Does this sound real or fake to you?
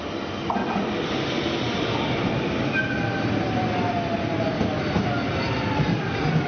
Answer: real